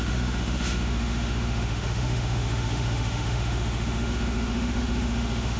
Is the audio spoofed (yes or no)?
yes